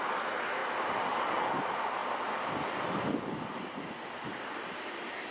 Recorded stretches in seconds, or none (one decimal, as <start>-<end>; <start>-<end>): 0.0-5.3